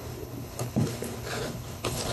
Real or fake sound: fake